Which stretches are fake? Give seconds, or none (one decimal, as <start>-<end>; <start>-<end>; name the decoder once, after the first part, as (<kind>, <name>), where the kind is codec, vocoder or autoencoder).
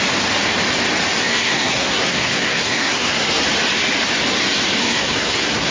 1.2-3.4 (codec, SNAC); 4.8-5.7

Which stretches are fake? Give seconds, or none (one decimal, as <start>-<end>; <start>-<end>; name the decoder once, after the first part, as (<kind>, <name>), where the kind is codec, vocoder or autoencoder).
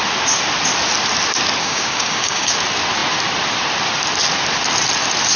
1.6-2.5 (codec, DAC)